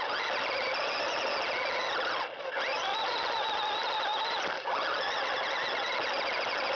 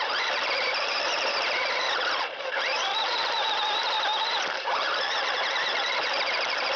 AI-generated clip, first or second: second